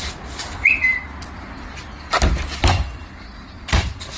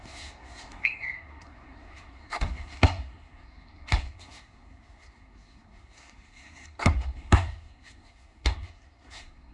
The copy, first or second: second